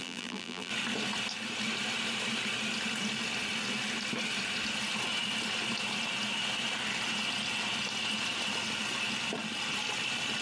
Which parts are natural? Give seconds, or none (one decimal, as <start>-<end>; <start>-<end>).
0.7-10.4